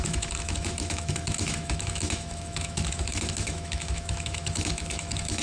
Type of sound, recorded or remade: remade